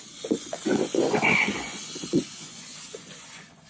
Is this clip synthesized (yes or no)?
yes